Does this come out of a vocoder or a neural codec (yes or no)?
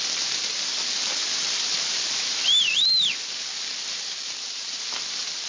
no